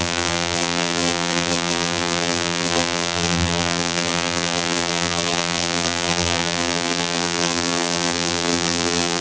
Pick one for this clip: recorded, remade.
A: remade